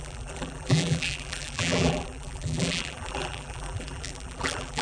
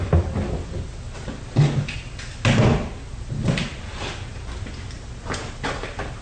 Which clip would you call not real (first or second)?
first